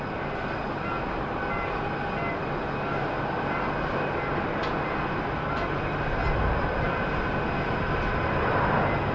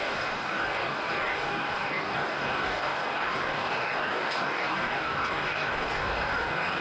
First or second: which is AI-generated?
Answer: second